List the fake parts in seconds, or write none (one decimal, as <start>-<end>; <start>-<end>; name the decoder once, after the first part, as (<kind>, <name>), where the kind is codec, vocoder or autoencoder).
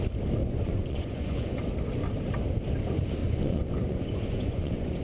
0.4-1.6 (vocoder, Vocos); 3.2-5.0